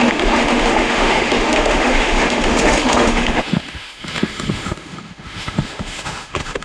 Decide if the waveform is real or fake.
fake